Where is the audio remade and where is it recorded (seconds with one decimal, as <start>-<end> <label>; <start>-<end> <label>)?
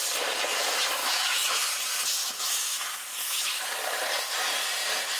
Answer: 0.0-1.0 recorded; 1.0-1.6 remade; 1.6-2.2 recorded; 2.2-3.6 remade; 3.6-5.2 recorded